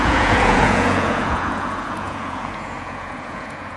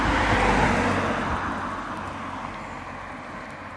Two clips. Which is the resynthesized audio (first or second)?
first